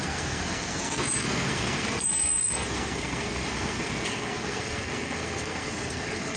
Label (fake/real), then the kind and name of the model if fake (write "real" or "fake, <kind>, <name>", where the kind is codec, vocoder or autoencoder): fake, codec, SNAC